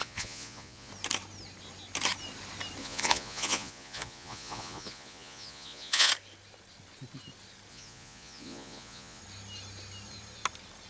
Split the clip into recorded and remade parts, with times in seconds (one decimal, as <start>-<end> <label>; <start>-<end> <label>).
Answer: 0.0-0.9 remade; 0.9-2.8 recorded; 2.8-6.1 remade; 6.1-7.7 recorded; 7.7-9.2 remade; 9.2-10.9 recorded